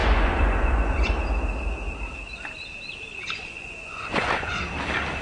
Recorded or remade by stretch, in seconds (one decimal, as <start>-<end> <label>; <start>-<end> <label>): 0.0-1.1 remade; 1.1-3.1 recorded; 3.1-4.6 remade; 4.6-5.2 recorded

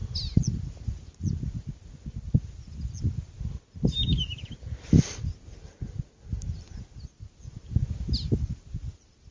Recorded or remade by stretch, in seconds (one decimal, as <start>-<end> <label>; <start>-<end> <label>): 0.0-9.3 recorded

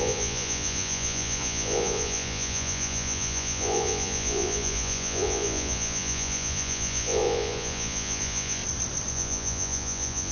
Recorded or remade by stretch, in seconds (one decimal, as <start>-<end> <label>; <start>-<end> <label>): 0.0-8.6 remade; 8.6-9.1 recorded; 9.1-10.3 remade

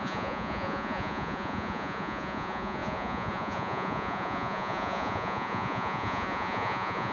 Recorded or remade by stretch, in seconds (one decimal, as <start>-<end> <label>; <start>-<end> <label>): 0.0-7.1 remade

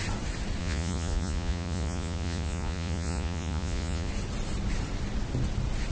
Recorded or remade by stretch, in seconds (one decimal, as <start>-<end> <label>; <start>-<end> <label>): 0.0-0.6 recorded; 0.6-4.1 remade; 4.1-5.9 recorded

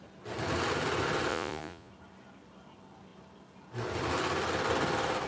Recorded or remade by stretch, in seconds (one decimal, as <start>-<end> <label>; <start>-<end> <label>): 0.0-1.3 recorded; 1.3-1.9 remade; 1.9-5.3 recorded

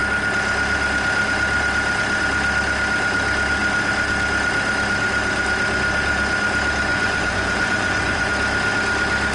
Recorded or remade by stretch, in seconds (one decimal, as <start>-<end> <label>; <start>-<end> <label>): 0.0-6.9 recorded; 6.9-8.3 remade; 8.3-9.3 recorded